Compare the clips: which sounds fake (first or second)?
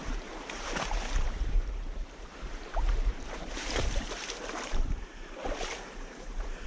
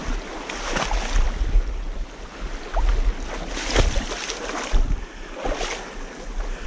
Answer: first